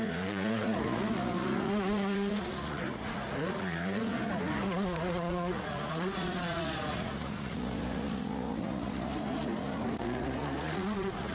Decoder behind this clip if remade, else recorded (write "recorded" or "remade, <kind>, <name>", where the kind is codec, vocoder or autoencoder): remade, vocoder, Vocos